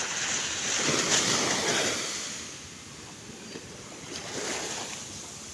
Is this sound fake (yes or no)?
no